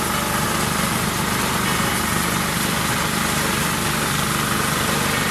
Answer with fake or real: real